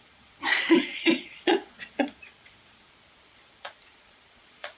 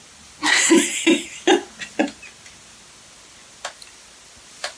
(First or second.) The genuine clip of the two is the second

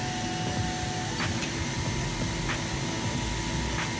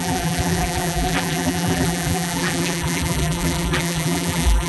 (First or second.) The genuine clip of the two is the first